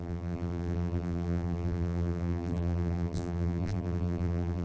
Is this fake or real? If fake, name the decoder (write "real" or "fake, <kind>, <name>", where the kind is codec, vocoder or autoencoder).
fake, vocoder, BigVGAN v2